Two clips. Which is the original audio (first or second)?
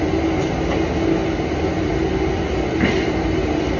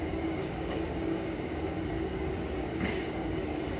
first